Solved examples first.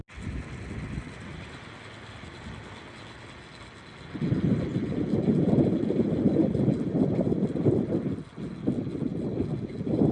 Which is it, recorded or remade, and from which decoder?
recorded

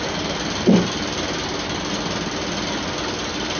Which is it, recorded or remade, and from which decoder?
recorded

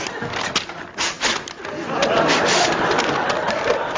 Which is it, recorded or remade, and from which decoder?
recorded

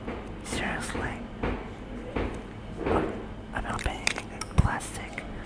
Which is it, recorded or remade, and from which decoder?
recorded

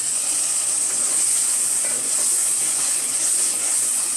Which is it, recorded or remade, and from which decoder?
remade, vocoder, Vocos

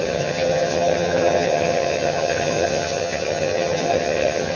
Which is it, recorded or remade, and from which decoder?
remade, vocoder, HiFi-GAN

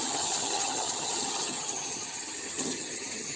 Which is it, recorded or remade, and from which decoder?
remade, vocoder, HiFi-GAN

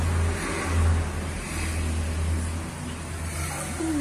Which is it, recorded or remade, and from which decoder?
recorded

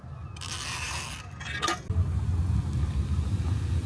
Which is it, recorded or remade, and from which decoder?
recorded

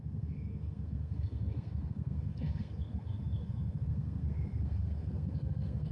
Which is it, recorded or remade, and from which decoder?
remade, codec, SNAC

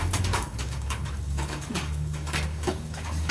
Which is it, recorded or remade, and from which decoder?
remade, codec, DAC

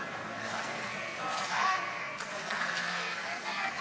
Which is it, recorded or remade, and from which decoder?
remade, codec, SNAC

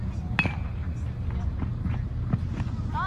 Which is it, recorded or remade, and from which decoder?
recorded